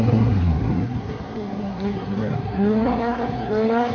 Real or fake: fake